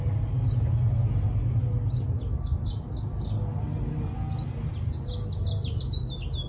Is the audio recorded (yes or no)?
yes